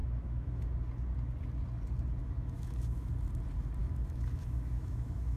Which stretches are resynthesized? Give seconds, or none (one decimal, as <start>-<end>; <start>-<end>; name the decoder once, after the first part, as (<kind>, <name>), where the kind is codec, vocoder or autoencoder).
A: 0.0-0.6 (autoencoder, DAC-VAE); 2.2-3.1; 3.8-5.4